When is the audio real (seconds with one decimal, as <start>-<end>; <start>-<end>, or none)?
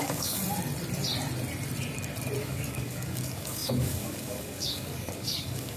0.4-2.4